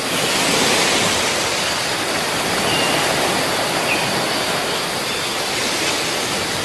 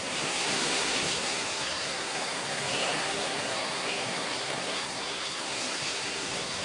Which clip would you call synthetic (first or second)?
second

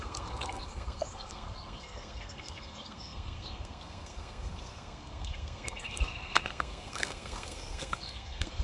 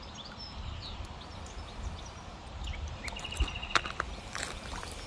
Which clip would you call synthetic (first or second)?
first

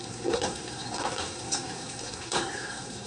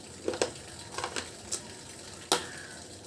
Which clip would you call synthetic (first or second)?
first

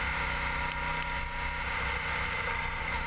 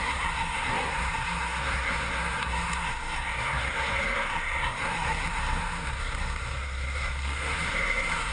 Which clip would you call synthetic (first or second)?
second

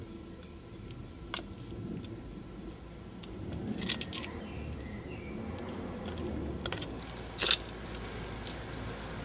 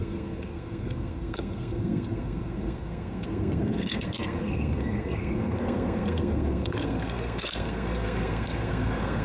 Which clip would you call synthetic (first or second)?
second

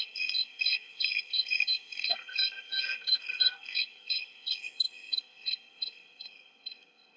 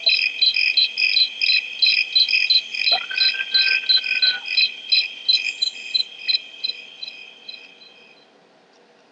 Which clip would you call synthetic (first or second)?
first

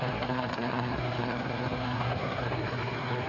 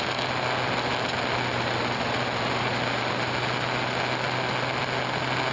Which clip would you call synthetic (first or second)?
first